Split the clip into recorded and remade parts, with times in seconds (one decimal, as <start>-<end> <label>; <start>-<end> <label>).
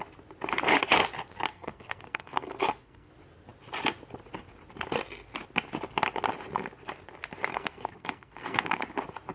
0.0-1.5 recorded; 1.5-3.1 remade; 3.1-7.5 recorded; 7.5-8.8 remade; 8.8-9.3 recorded